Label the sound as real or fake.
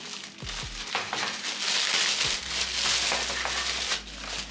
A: real